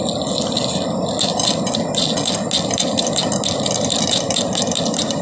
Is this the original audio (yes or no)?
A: yes